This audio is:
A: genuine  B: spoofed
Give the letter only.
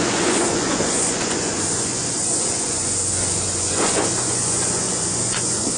B